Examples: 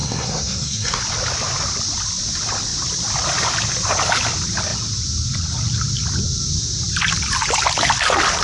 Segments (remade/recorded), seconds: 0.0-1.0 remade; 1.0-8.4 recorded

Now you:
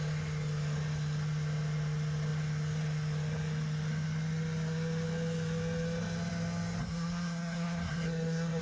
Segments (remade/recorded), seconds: 0.0-6.8 recorded; 6.8-8.6 remade

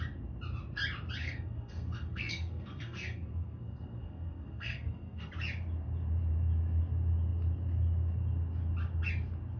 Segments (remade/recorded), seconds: 0.0-1.2 recorded; 1.2-5.3 remade; 5.3-9.6 recorded

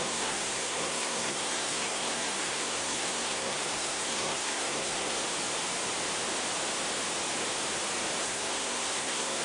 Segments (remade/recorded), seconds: 0.0-5.2 remade; 5.2-8.2 recorded; 8.2-9.4 remade

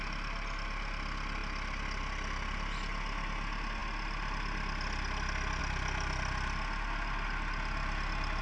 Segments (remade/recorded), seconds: 0.0-8.4 recorded

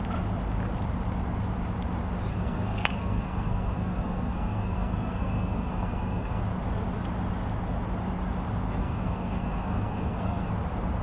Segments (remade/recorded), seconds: 0.0-2.3 recorded; 2.3-6.4 remade; 6.4-8.8 recorded; 8.8-10.5 remade; 10.5-11.0 recorded